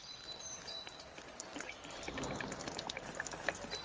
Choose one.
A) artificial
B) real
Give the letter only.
B